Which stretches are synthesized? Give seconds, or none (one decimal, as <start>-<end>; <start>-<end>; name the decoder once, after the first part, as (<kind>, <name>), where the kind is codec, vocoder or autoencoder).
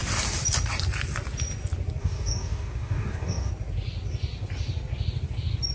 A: 2.0-3.5 (codec, DAC)